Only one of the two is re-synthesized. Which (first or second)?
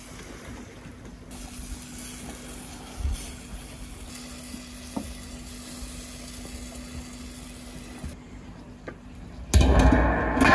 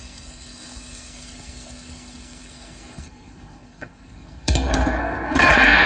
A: second